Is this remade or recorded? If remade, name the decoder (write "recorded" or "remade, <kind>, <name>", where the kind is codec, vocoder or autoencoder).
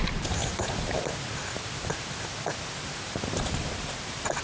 remade, vocoder, BigVGAN v2